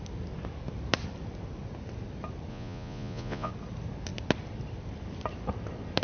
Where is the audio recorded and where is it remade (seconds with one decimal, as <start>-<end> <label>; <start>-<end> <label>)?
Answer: 0.0-2.5 recorded; 2.5-3.5 remade; 3.5-6.0 recorded